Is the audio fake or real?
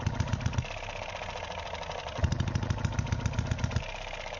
real